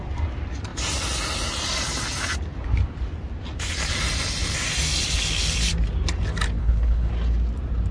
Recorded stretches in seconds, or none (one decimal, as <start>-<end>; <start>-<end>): 0.0-6.6; 7.1-7.9